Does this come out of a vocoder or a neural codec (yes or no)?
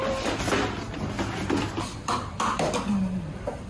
no